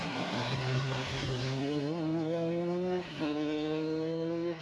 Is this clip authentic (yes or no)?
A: no